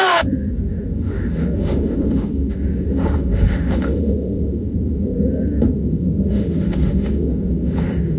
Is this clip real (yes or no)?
no